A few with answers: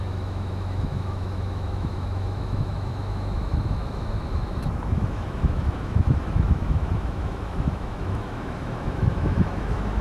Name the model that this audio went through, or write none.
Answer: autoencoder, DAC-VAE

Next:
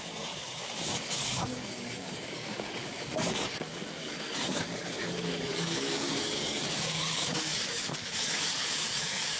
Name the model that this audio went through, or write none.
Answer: codec, DAC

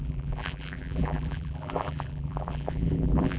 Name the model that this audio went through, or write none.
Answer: vocoder, BigVGAN v2